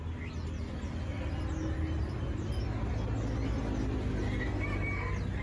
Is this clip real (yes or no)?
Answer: yes